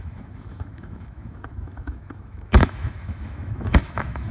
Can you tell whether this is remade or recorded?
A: remade